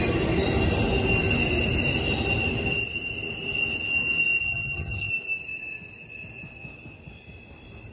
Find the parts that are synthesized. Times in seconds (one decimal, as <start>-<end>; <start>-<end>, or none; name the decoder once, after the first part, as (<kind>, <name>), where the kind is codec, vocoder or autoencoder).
4.4-5.1 (vocoder, HiFi-GAN)